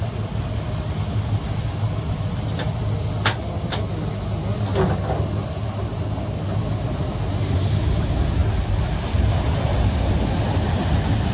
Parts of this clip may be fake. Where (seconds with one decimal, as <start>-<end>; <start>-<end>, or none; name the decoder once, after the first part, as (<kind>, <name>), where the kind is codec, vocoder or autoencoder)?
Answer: none